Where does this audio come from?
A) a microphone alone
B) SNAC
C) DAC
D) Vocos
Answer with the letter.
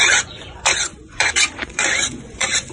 D